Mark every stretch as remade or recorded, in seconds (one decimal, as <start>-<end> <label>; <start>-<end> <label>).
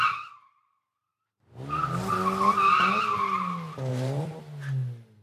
0.0-3.9 recorded; 3.9-4.4 remade; 4.4-5.2 recorded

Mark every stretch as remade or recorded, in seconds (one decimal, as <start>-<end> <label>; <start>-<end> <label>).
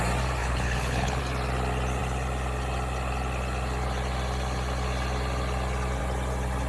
0.0-0.4 recorded; 0.4-1.2 remade; 1.2-6.7 recorded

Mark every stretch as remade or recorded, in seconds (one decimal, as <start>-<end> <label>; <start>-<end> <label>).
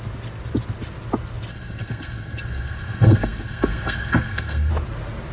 0.0-1.5 recorded; 1.5-4.7 remade; 4.7-5.3 recorded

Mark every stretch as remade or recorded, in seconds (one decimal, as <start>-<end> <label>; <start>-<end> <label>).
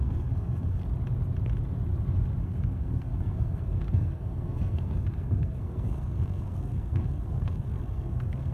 0.0-0.8 remade; 0.8-2.4 recorded; 2.4-8.5 remade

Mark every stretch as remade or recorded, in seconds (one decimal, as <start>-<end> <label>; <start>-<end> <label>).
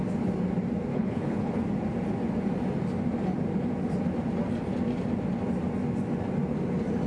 0.0-0.9 recorded; 0.9-1.6 remade; 1.6-7.1 recorded